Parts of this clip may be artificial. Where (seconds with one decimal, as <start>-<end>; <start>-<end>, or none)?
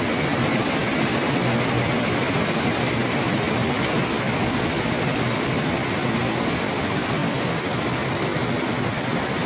none